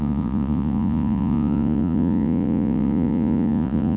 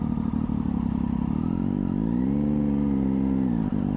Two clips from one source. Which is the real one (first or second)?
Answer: second